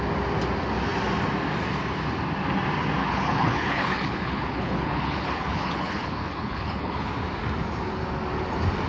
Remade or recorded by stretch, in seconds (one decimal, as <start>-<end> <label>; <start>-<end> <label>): 0.0-3.0 recorded; 3.0-7.1 remade; 7.1-8.9 recorded